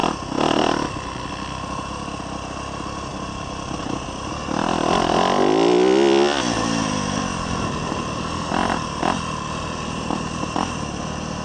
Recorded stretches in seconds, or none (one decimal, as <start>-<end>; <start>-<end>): 0.0-11.4